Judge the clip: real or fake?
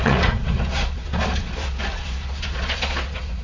fake